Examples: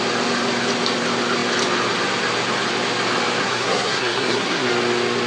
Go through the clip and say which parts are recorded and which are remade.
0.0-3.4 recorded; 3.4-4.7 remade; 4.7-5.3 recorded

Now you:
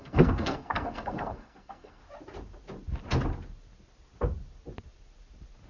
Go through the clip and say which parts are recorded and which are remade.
0.0-2.0 remade; 2.0-5.7 recorded

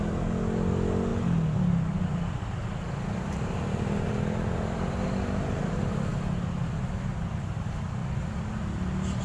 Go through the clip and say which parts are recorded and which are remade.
0.0-9.2 recorded

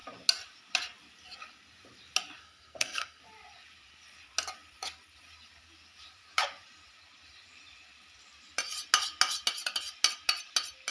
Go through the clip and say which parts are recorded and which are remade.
0.0-2.4 recorded; 2.4-3.2 remade; 3.2-10.9 recorded